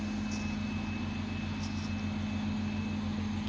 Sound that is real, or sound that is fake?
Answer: real